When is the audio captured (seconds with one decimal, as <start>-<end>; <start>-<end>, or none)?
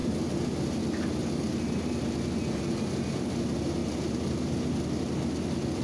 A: 0.0-5.8